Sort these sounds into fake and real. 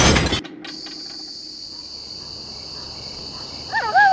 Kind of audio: real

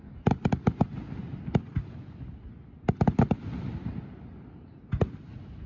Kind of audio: real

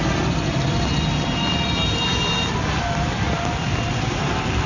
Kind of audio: real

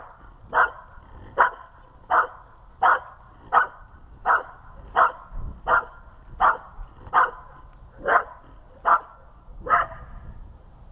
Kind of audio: real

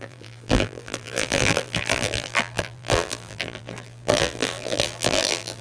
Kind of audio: fake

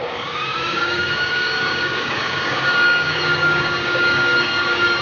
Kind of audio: fake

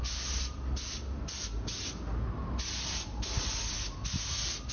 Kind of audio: real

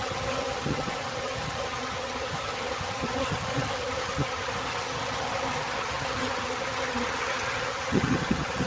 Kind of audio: fake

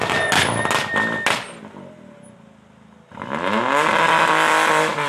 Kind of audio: real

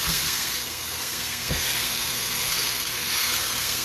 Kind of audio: fake